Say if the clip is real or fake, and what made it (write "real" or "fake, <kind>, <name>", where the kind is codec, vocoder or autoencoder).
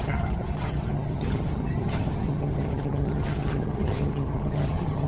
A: fake, vocoder, HiFi-GAN